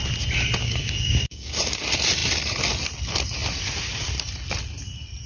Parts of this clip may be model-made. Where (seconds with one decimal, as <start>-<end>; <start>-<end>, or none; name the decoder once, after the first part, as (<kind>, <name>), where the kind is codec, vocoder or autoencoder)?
0.6-1.6 (codec, DAC)